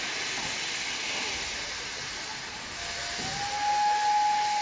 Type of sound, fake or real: real